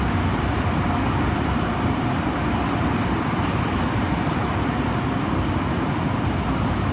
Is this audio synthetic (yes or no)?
no